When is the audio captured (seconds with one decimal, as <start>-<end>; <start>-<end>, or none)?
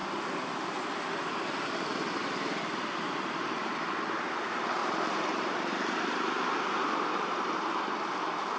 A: 0.0-4.8; 8.1-8.6